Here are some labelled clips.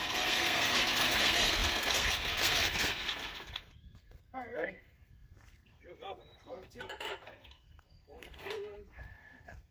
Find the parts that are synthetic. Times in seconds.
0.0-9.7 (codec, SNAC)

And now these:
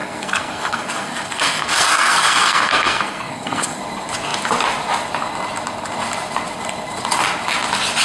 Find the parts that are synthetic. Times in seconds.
0.0-3.8 (codec, SNAC)

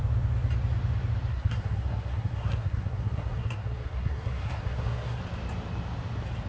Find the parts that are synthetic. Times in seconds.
1.3-5.2 (codec, SNAC)

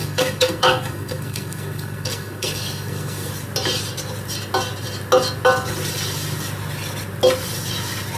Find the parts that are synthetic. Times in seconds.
0.0-3.3 (codec, SNAC)

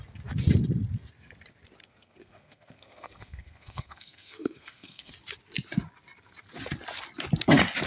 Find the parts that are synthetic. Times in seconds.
1.8-5.1 (codec, SNAC)

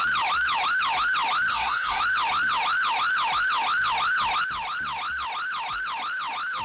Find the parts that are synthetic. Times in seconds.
1.5-2.0 (codec, SNAC)

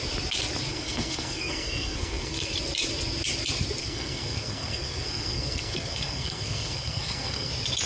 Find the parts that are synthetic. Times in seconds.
0.7-2.5 (codec, SNAC); 3.8-7.5